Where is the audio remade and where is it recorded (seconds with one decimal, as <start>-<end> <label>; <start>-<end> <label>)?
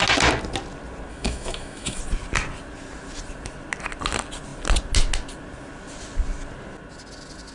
0.0-1.1 recorded; 1.1-2.0 remade; 2.0-7.5 recorded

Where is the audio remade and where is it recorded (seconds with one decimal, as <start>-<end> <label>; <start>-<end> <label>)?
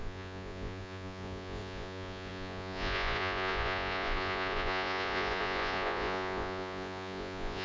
0.0-7.6 remade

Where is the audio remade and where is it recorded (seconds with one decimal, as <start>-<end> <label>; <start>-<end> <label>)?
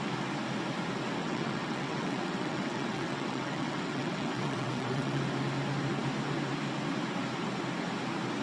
0.0-1.2 recorded; 1.2-5.2 remade; 5.2-8.4 recorded